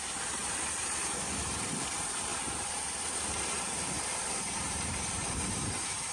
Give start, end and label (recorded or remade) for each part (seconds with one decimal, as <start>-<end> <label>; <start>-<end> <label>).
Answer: 0.0-0.4 recorded; 0.4-1.2 remade; 1.2-2.3 recorded; 2.3-6.1 remade